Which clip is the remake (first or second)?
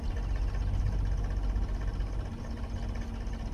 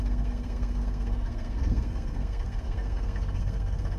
second